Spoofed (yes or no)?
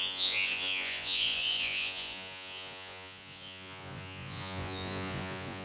yes